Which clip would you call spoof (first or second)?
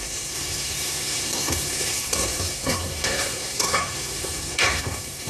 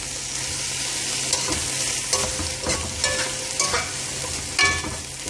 first